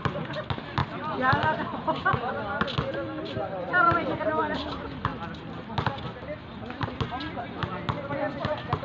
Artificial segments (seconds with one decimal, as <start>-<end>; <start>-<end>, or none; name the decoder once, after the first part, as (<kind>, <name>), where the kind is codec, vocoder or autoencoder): none